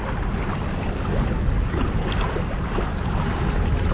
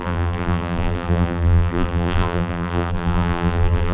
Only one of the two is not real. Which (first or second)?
second